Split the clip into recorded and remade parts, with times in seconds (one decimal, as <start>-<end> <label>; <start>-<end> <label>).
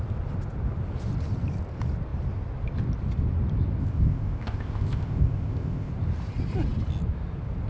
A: 0.0-3.8 recorded; 3.8-5.9 remade; 5.9-7.7 recorded